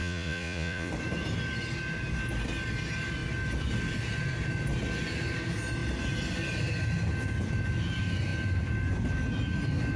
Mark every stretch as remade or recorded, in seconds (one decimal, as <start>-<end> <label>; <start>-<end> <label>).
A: 0.0-0.9 remade; 0.9-10.0 recorded